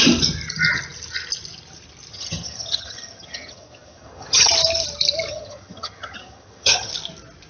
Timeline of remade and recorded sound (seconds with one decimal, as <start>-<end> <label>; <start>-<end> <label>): 0.0-2.1 recorded; 2.1-4.5 remade; 4.5-5.3 recorded; 5.3-6.9 remade; 6.9-7.5 recorded